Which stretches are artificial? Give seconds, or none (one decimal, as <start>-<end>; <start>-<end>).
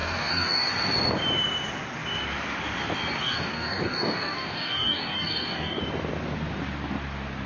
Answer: 0.0-0.7; 3.2-5.8